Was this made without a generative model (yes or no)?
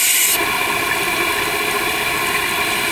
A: yes